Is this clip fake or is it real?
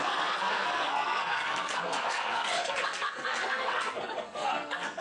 fake